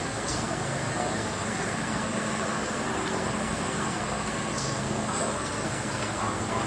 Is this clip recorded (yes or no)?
no